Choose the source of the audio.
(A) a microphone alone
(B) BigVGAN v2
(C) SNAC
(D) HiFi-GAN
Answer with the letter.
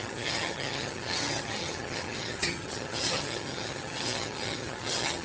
D